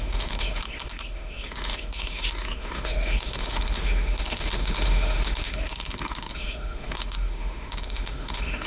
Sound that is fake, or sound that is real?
fake